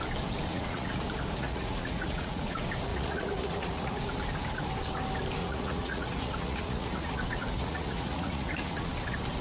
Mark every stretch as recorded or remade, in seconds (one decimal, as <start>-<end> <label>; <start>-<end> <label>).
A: 0.0-0.5 recorded; 0.5-1.0 remade; 1.0-1.4 recorded; 1.4-2.5 remade; 2.5-2.9 recorded; 2.9-4.0 remade; 4.0-5.4 recorded; 5.4-8.9 remade; 8.9-9.4 recorded